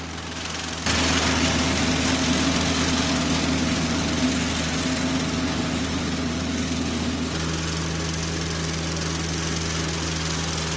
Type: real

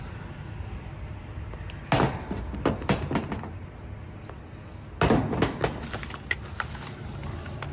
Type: real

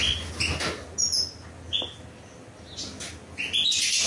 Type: real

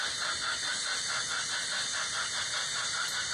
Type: real